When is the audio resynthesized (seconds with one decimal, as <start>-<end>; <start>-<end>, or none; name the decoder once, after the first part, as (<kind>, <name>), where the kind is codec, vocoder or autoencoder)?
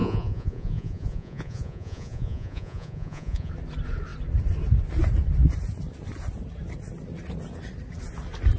0.0-3.5 (vocoder, Vocos)